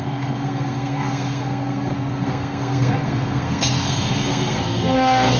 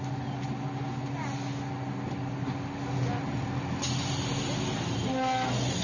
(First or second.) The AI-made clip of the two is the first